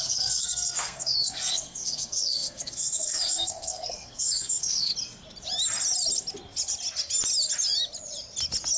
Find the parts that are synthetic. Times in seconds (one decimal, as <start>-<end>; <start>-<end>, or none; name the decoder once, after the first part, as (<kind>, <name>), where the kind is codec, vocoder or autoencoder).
0.0-4.9 (codec, SNAC)